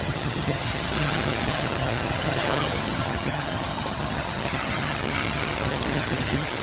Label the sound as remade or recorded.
remade